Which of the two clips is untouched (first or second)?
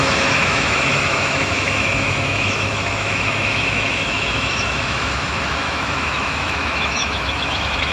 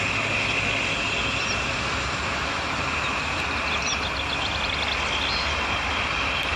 second